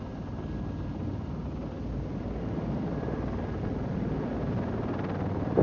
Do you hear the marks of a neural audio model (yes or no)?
no